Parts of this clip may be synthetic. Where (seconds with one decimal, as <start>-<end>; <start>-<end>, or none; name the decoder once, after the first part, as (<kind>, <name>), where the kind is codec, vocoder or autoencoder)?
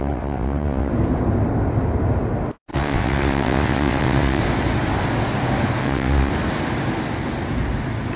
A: 0.0-0.9 (vocoder, WaveNeXt); 2.7-4.4; 5.8-6.3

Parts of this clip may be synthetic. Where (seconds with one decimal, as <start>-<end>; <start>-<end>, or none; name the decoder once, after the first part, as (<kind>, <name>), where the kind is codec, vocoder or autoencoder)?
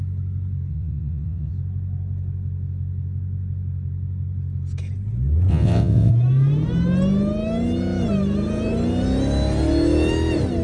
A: 0.7-1.5 (vocoder, WaveNeXt); 5.5-6.1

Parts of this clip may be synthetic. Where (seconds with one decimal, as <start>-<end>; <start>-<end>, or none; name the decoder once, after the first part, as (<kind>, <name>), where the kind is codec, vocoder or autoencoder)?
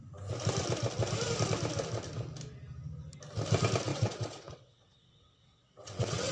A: 3.9-6.3 (vocoder, WaveNeXt)